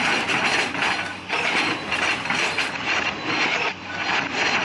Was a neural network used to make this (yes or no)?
no